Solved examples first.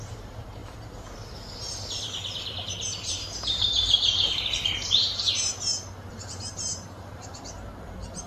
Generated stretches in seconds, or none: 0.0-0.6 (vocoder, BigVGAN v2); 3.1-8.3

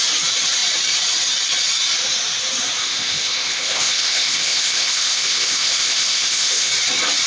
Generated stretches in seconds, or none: 2.8-6.7 (codec, ZipCodec)

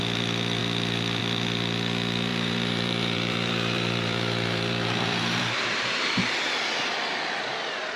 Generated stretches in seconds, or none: 2.3-6.2 (vocoder, BigVGAN v2)

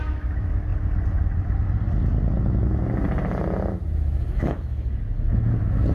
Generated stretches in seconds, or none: 0.0-0.7 (autoencoder, DAC-VAE); 3.7-5.9

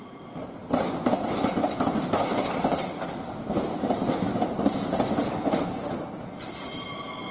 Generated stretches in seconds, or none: 5.4-6.1 (vocoder, BigVGAN v2)

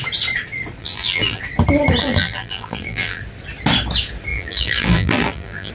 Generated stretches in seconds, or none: 0.8-1.4 (vocoder, BigVGAN v2); 2.0-3.2; 4.3-5.7

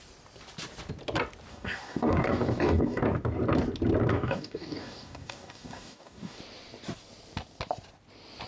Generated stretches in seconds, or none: 1.5-3.0 (codec, DAC); 4.1-6.4